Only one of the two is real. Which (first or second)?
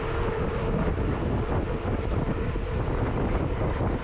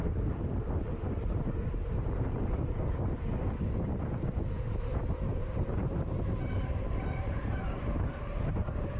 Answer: first